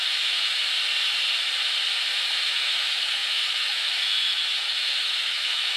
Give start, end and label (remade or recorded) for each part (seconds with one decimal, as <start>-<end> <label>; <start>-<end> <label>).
0.0-0.6 remade; 0.6-2.3 recorded; 2.3-5.8 remade